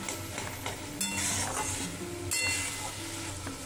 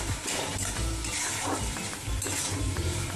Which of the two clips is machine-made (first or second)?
second